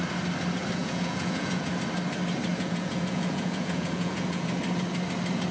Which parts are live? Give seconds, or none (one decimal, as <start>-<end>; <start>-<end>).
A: 0.0-0.8; 1.7-2.5; 4.6-5.5